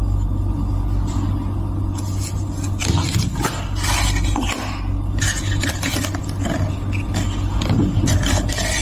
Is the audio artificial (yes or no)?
no